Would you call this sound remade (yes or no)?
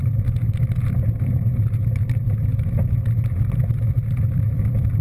no